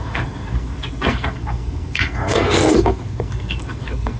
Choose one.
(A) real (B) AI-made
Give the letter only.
B